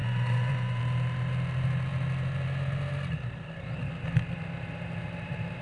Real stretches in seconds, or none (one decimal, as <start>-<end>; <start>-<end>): 0.8-5.6